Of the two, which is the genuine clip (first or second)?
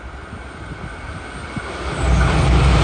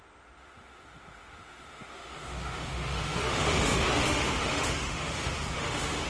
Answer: first